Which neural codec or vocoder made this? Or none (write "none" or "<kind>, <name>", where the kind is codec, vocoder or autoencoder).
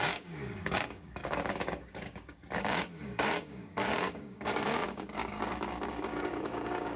codec, DAC